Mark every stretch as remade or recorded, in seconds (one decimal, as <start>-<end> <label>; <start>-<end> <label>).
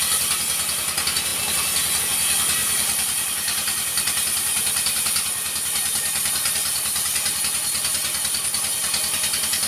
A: 0.0-2.6 recorded; 2.6-7.4 remade; 7.4-9.7 recorded